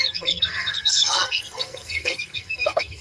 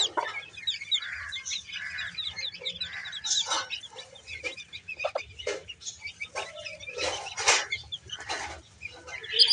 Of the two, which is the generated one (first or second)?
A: first